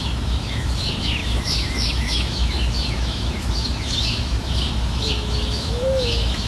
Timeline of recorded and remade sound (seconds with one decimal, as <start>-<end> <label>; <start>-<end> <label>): 0.0-6.5 remade